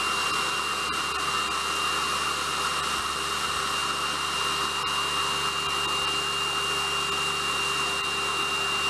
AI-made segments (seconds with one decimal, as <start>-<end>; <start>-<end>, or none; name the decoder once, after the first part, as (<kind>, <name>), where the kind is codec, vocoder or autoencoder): none